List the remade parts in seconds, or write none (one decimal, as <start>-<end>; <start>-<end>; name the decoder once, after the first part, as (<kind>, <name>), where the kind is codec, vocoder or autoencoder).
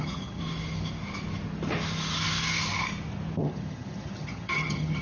0.0-0.4 (vocoder, HiFi-GAN); 3.4-5.0